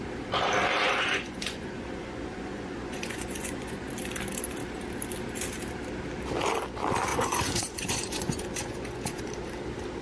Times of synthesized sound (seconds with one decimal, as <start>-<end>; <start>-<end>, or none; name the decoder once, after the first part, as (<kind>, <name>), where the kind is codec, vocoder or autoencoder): 0.8-3.9 (vocoder, Vocos); 7.1-9.2